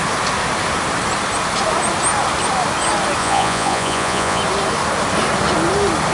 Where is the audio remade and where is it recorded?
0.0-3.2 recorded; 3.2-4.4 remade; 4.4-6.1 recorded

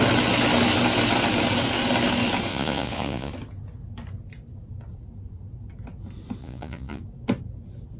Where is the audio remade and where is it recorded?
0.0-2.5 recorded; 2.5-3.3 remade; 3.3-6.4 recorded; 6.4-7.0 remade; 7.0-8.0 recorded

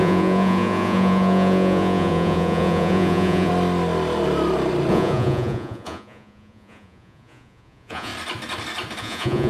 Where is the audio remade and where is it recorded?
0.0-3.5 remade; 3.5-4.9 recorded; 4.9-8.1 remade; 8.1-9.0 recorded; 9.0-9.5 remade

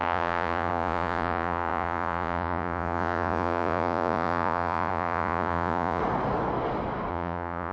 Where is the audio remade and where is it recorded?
0.0-6.0 remade; 6.0-7.1 recorded; 7.1-7.7 remade